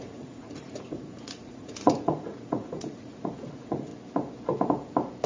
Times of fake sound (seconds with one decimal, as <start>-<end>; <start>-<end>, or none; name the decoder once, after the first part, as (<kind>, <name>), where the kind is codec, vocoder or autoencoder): 0.0-3.9 (vocoder, Vocos)